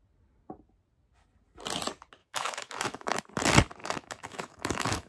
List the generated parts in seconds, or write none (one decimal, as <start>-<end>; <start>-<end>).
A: 2.2-3.2; 3.8-5.1